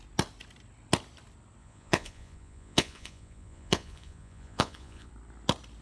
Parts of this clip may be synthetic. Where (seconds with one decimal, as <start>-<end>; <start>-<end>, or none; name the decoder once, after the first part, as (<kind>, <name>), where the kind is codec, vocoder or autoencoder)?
1.6-5.1 (vocoder, Vocos)